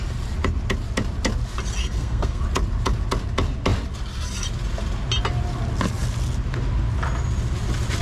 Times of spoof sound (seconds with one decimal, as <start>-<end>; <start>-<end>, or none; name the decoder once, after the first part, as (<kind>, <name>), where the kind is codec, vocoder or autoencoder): 1.8-2.4 (codec, SNAC)